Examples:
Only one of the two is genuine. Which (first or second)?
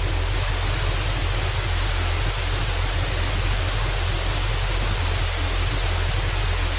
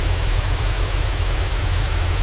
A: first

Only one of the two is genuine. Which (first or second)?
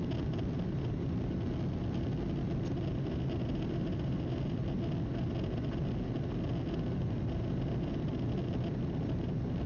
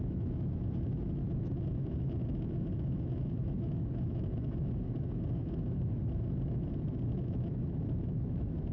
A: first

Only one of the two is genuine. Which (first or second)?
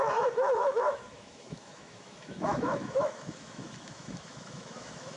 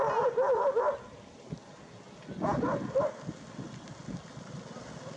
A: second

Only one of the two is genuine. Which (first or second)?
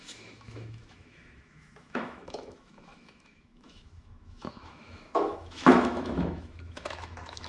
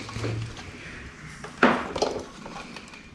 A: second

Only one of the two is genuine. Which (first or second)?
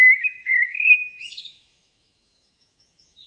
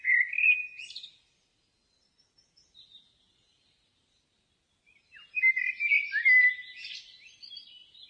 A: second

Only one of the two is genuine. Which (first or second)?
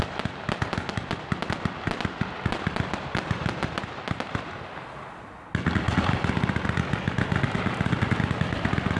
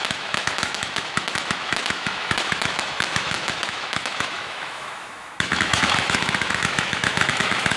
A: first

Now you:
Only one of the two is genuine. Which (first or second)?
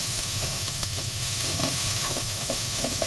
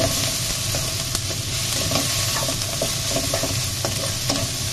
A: second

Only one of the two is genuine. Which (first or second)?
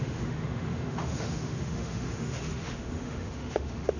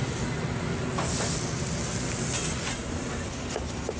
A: second